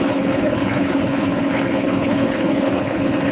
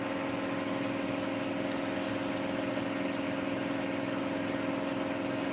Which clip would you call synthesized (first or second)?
first